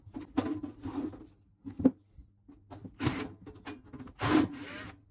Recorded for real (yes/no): yes